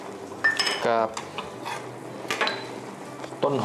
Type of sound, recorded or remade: recorded